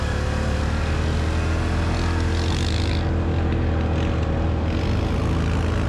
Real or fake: real